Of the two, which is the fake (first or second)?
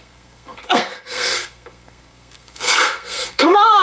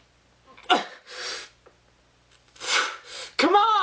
first